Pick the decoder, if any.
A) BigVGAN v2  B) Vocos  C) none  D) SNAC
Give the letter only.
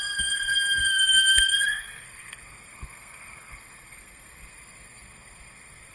D